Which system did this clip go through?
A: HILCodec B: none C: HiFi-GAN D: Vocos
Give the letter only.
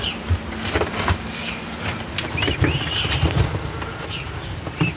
B